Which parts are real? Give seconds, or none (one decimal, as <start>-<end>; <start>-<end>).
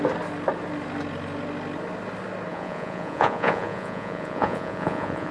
0.0-2.5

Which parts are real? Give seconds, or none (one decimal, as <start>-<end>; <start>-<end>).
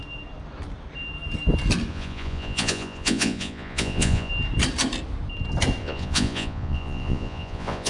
0.0-1.9; 4.3-5.8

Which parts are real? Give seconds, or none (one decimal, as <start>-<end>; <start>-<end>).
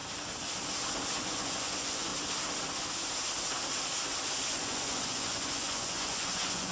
0.0-1.2; 2.1-4.5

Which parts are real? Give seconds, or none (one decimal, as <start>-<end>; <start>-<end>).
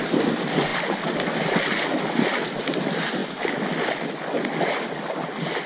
0.0-5.7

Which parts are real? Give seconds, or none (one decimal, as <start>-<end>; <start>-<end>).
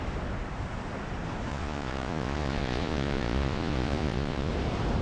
0.0-1.5; 4.5-5.0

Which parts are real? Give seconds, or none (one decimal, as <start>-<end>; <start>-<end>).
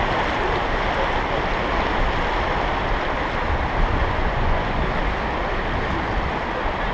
0.0-4.0; 4.8-6.9